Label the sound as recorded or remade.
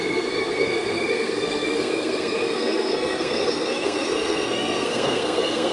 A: remade